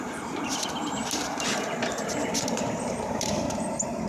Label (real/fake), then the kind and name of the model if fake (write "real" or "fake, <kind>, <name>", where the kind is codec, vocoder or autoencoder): fake, vocoder, BigVGAN v2